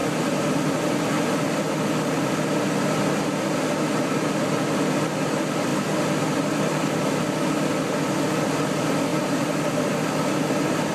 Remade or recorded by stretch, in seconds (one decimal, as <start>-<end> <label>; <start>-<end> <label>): 0.0-9.1 recorded; 9.1-9.7 remade; 9.7-10.9 recorded